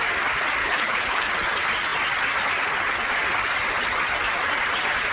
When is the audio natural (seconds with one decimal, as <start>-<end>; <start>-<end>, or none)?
0.0-0.6; 1.3-5.1